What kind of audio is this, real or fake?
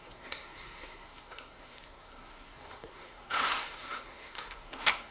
fake